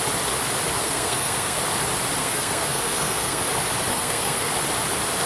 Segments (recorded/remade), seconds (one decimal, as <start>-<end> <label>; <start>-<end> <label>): 0.0-0.8 recorded; 0.8-1.6 remade; 1.6-2.2 recorded; 2.2-3.4 remade; 3.4-3.9 recorded; 3.9-4.5 remade; 4.5-5.3 recorded